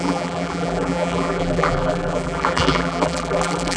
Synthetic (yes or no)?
yes